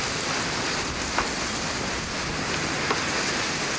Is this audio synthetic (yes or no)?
no